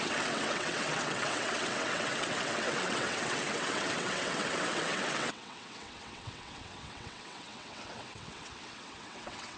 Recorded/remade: remade